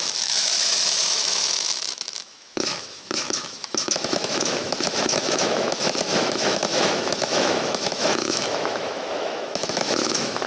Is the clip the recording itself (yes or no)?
no